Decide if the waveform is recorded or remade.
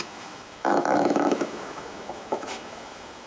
remade